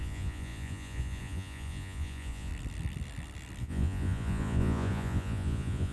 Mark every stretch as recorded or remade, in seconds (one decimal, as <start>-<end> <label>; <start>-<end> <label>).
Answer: 0.0-2.5 remade; 2.5-3.6 recorded; 3.6-5.9 remade